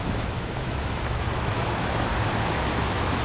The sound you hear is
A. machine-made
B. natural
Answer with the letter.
A